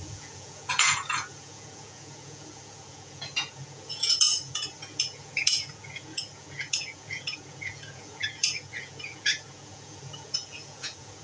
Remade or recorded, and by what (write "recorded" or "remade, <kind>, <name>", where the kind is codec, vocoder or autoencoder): remade, vocoder, Vocos